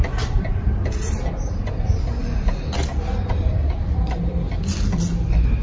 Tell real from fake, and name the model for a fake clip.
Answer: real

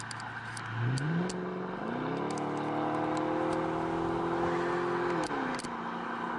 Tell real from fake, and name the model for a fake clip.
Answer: real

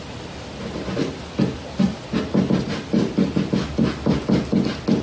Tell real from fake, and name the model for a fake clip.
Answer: real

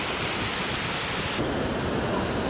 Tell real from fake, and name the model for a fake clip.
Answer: real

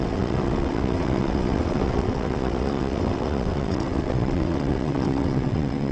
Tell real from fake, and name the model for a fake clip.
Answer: fake, vocoder, WaveNeXt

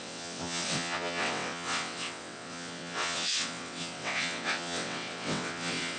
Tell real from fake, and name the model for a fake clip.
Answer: fake, vocoder, WaveNeXt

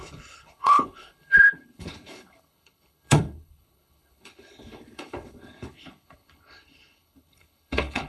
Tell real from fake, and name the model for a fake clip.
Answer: fake, codec, HILCodec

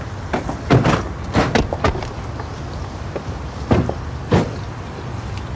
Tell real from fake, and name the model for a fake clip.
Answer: real